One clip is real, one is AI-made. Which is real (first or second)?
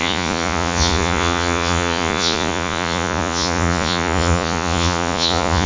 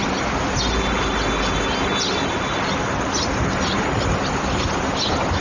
second